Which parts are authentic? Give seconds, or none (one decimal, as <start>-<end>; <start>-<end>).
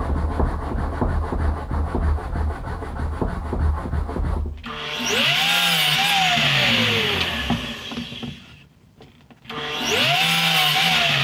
0.0-11.2